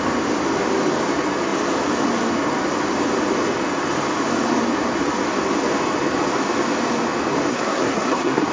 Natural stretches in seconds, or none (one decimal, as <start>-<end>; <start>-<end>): 0.0-7.5